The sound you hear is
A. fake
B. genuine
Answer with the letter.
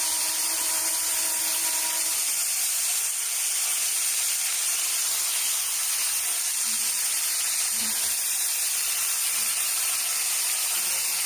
B